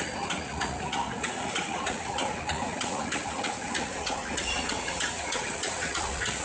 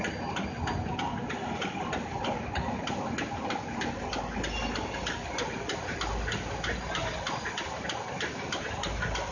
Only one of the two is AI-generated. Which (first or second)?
first